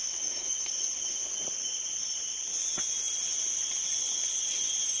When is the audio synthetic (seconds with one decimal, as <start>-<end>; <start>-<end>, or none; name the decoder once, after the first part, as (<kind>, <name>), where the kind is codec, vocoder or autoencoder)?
0.0-0.7 (autoencoder, DAC-VAE)